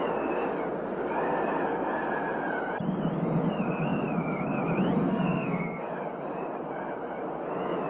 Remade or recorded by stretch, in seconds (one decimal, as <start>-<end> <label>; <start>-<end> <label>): 0.0-5.0 recorded; 5.0-5.9 remade; 5.9-7.9 recorded